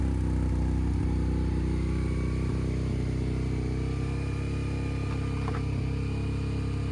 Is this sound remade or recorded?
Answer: recorded